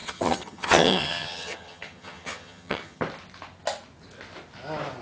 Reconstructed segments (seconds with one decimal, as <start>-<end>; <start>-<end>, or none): 0.0-3.0